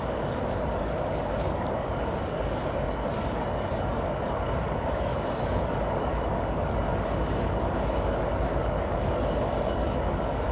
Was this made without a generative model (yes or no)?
no